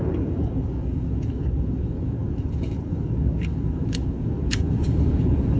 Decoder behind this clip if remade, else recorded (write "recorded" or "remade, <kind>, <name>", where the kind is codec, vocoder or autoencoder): remade, codec, DAC